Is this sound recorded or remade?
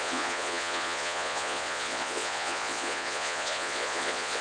remade